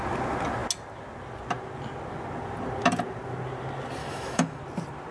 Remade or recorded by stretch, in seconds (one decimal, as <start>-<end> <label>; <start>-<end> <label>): 0.0-4.0 recorded; 4.0-4.6 remade; 4.6-5.1 recorded